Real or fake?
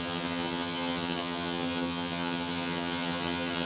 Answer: fake